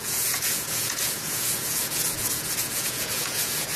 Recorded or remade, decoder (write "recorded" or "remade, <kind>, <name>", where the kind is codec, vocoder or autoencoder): remade, vocoder, Vocos